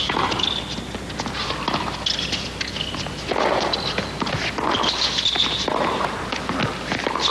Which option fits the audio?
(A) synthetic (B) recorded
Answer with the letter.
B